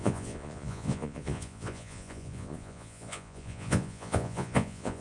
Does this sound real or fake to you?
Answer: fake